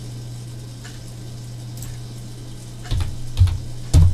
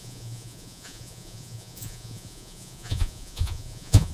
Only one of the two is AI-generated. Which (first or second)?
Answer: second